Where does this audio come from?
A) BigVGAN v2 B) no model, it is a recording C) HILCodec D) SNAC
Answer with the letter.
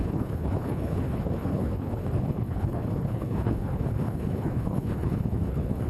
C